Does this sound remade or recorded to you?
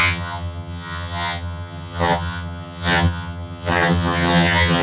remade